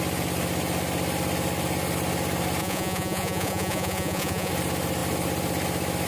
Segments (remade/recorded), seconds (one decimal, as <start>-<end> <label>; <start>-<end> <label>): 0.0-2.6 recorded; 2.6-4.5 remade; 4.5-6.1 recorded